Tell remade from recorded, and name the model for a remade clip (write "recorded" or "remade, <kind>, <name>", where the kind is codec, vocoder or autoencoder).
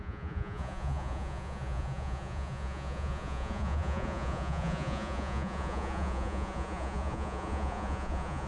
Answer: remade, vocoder, Vocos